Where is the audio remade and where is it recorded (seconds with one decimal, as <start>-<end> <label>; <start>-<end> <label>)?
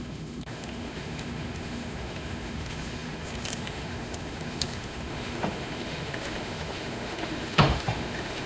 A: 0.0-8.5 remade